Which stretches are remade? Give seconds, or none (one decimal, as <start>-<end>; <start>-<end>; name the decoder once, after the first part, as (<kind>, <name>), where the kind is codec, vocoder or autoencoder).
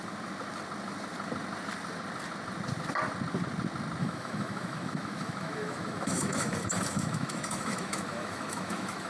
4.0-9.1 (autoencoder, DAC-VAE)